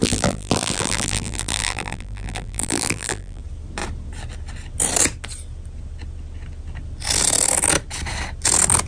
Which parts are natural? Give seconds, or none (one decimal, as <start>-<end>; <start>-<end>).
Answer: 3.4-8.9